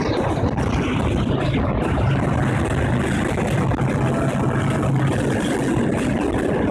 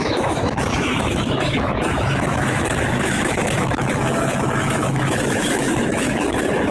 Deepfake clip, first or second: second